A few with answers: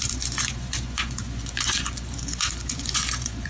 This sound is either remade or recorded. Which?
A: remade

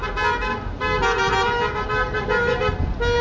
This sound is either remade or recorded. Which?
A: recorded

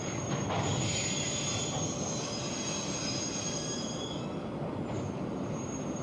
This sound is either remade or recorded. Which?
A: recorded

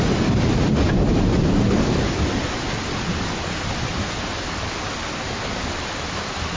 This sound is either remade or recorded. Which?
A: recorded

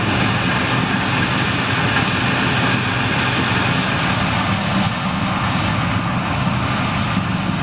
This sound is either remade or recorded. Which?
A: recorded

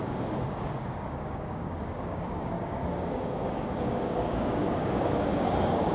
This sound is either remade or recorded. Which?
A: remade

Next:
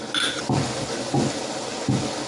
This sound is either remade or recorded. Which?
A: recorded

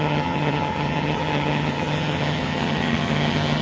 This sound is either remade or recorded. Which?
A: remade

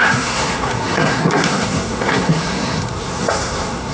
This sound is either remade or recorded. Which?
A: remade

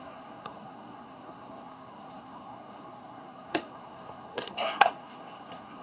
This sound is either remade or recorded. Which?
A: remade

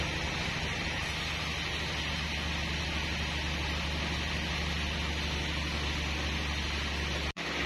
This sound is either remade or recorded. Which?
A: recorded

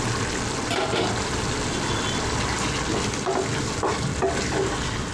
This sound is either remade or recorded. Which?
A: recorded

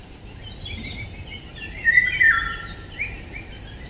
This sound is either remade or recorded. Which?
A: remade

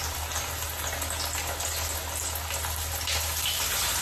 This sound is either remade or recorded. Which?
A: recorded